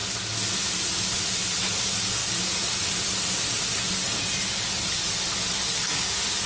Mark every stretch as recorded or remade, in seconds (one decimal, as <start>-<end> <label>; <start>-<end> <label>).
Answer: 0.0-6.5 recorded